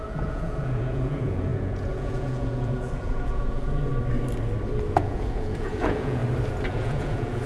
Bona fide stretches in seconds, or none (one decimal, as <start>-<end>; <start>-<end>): 3.9-4.9; 6.2-6.7